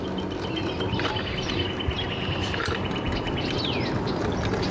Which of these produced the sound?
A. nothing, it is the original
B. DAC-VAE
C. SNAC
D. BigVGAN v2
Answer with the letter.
A